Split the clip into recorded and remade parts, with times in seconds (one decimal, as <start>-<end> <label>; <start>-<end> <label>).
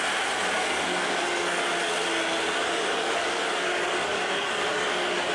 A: 0.0-0.7 recorded; 0.7-1.6 remade; 1.6-2.6 recorded; 2.6-5.3 remade